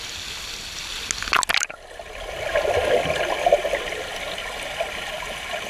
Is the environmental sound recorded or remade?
recorded